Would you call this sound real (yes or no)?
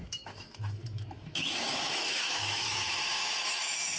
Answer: no